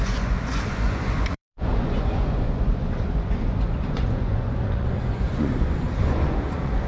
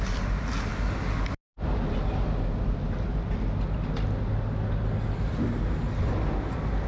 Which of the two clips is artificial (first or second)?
first